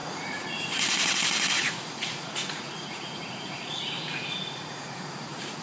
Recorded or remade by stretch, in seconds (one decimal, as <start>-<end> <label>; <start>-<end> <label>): 0.0-5.6 remade